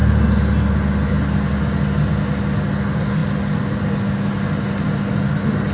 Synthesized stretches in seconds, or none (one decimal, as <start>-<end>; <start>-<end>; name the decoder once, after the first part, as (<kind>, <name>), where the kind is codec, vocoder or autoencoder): none